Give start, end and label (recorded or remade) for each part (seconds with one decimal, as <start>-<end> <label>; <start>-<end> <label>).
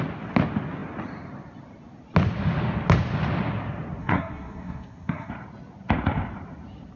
0.0-4.0 recorded; 4.0-5.3 remade; 5.3-7.0 recorded